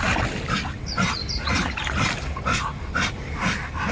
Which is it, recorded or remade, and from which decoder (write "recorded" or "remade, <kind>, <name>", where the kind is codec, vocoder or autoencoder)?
recorded